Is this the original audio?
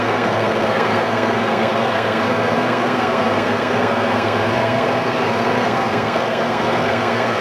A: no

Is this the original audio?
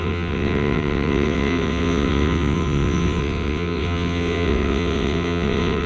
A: no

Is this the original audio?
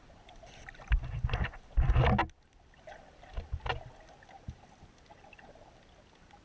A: yes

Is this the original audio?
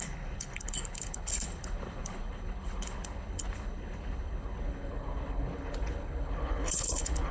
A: no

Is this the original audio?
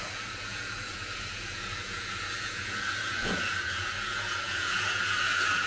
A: no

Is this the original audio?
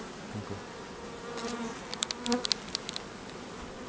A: yes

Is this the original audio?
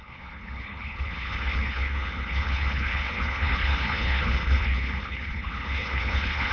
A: no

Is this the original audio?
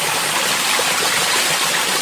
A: yes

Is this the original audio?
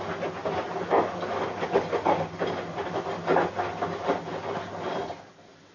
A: yes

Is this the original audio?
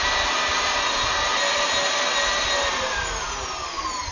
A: yes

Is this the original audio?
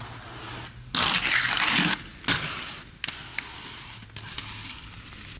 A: yes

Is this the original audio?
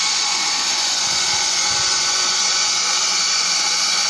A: no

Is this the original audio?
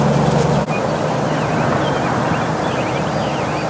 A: yes